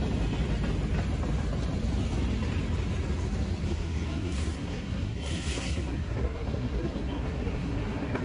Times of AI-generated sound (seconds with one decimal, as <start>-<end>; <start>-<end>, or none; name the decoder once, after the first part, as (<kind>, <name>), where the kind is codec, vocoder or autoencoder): 3.6-8.2 (codec, SNAC)